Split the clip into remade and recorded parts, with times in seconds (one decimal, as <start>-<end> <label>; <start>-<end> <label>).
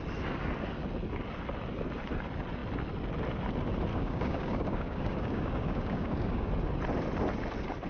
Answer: 0.0-3.9 recorded; 3.9-6.5 remade; 6.5-7.9 recorded